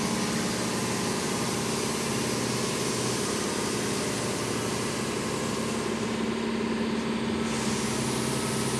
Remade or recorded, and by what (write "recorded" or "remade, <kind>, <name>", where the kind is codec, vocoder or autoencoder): recorded